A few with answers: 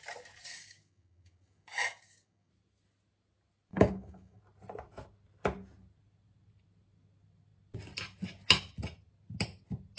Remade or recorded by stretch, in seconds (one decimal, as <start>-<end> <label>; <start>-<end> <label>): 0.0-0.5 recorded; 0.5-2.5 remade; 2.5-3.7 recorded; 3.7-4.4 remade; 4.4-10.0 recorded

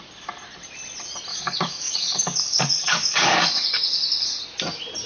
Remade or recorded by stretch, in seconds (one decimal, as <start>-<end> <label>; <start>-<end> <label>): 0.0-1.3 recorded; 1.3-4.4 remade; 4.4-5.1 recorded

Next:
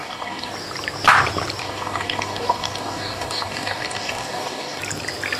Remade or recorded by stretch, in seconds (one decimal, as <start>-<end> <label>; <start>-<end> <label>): 0.0-0.5 remade; 0.5-1.6 recorded; 1.6-4.8 remade; 4.8-5.4 recorded

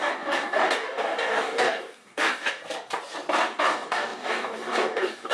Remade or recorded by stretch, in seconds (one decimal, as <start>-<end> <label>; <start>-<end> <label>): 0.0-2.6 remade; 2.6-3.6 recorded; 3.6-5.3 remade

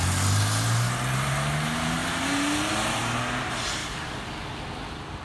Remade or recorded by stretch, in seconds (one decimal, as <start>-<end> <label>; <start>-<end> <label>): 0.0-3.8 recorded; 3.8-4.5 remade; 4.5-5.2 recorded

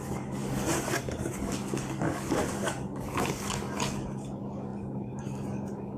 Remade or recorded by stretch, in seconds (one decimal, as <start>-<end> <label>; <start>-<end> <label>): 0.0-6.0 remade

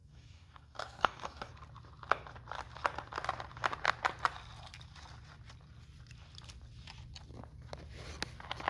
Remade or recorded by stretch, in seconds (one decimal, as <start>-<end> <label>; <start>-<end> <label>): 0.0-1.5 remade; 1.5-8.7 recorded

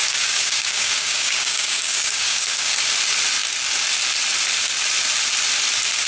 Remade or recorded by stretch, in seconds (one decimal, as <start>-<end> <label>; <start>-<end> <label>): 0.0-2.7 remade; 2.7-6.1 recorded